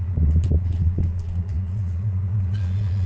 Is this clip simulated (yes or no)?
yes